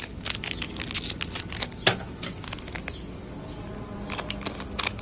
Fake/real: real